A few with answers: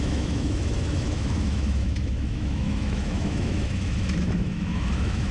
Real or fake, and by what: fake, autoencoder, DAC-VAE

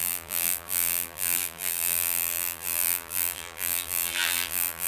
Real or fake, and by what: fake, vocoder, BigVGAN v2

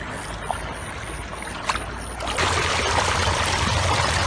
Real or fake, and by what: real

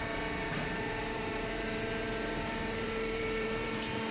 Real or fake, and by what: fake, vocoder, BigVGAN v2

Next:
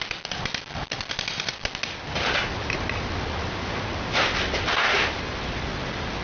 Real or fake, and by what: real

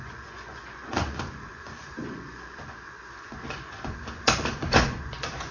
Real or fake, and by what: fake, vocoder, Vocos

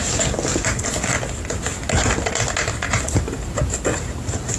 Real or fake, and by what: real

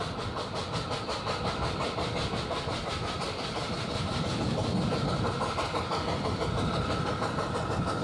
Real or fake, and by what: real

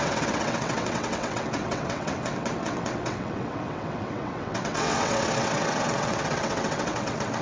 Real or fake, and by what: fake, vocoder, WaveNeXt